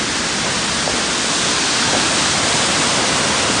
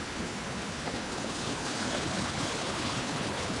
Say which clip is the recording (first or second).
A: first